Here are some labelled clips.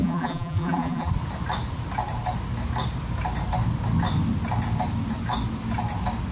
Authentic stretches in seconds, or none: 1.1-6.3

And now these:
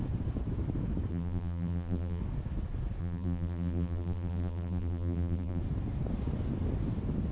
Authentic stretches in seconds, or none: 0.0-1.1; 2.2-3.0; 5.6-7.3

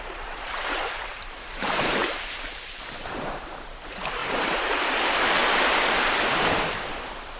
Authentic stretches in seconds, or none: 4.2-5.0; 5.4-6.9

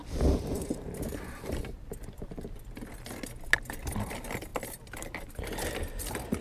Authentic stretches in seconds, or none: 1.6-6.4

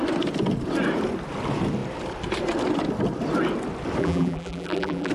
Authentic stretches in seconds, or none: 0.0-4.0